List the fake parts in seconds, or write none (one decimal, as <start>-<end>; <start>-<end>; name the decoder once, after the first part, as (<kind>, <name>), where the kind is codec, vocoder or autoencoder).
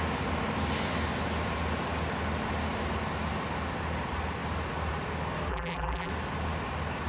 5.5-6.1 (vocoder, BigVGAN v2)